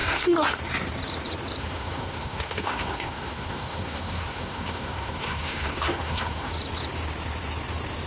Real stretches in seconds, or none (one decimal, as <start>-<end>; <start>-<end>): 0.6-1.6; 6.5-8.1